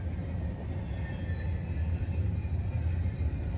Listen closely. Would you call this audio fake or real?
real